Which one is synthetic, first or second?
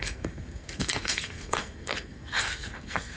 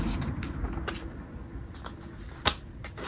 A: first